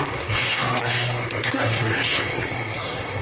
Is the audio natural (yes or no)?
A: no